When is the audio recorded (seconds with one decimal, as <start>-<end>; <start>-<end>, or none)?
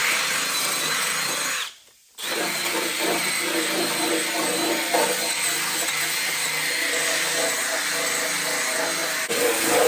0.0-9.9